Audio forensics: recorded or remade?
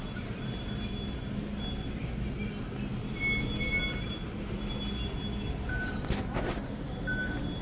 recorded